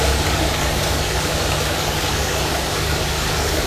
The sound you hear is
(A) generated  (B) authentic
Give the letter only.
A